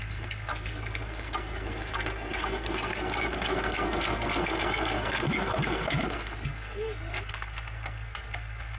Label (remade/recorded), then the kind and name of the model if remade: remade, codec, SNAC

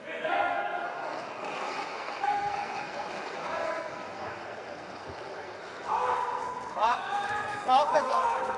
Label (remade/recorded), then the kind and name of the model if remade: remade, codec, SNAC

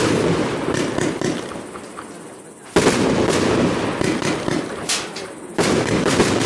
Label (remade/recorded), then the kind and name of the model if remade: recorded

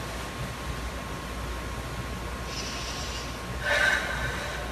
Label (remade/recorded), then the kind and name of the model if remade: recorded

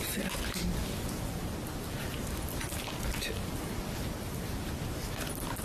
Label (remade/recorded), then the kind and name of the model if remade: recorded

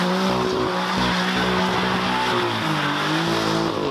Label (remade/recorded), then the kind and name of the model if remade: recorded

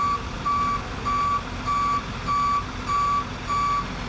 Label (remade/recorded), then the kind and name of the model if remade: recorded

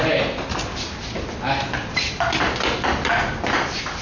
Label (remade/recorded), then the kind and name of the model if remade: recorded